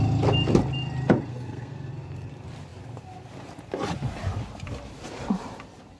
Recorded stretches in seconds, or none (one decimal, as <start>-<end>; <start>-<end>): 0.0-1.3; 1.9-6.0